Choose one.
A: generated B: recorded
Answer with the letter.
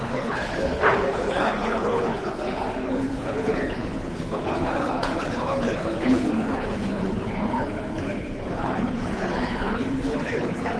A